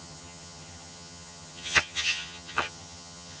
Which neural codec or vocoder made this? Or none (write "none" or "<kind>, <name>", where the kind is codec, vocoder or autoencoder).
vocoder, HiFi-GAN